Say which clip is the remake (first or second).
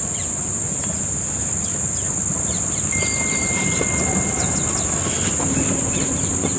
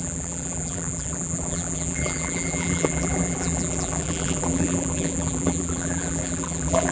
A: second